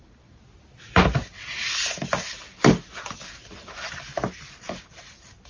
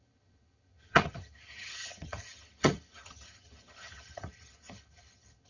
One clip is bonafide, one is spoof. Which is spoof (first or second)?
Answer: second